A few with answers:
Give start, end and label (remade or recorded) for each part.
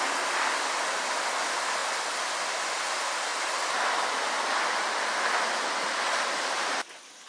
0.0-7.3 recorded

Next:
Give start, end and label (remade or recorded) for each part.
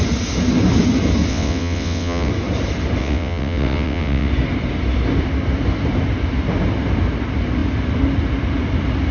0.0-1.3 recorded; 1.3-2.3 remade; 2.3-3.0 recorded; 3.0-4.3 remade; 4.3-9.1 recorded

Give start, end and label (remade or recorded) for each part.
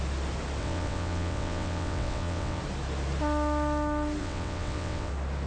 0.0-0.6 recorded; 0.6-2.6 remade; 2.6-4.2 recorded; 4.2-5.1 remade; 5.1-5.5 recorded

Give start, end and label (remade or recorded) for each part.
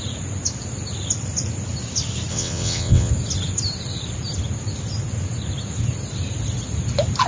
0.0-2.3 recorded; 2.3-3.1 remade; 3.1-7.3 recorded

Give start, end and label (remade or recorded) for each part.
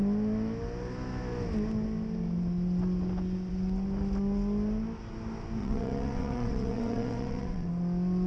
0.0-5.6 recorded; 5.6-7.7 remade; 7.7-8.3 recorded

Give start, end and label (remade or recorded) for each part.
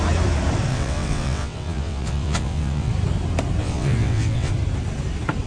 0.0-0.7 recorded; 0.7-2.9 remade; 2.9-3.6 recorded; 3.6-4.5 remade; 4.5-5.5 recorded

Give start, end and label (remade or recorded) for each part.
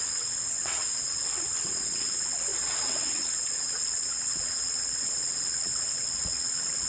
0.0-6.9 remade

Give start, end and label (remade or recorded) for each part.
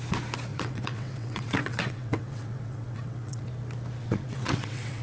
0.0-0.5 recorded; 0.5-3.5 remade; 3.5-4.0 recorded; 4.0-5.0 remade